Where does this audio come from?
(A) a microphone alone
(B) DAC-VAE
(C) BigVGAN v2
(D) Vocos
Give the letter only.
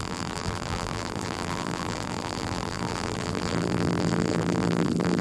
C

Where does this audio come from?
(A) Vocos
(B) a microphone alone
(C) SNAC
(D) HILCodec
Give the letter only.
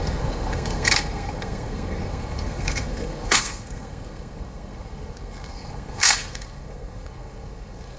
C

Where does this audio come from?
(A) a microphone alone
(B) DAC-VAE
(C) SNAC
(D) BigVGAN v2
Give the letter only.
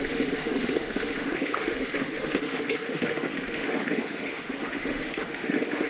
B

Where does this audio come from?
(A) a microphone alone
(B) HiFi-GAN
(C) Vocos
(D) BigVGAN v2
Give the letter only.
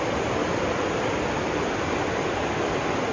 A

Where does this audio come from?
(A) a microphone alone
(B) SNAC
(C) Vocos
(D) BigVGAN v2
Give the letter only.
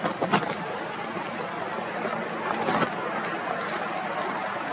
A